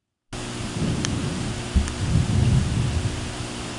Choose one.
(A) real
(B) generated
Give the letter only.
A